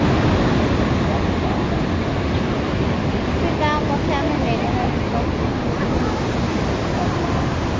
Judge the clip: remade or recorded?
recorded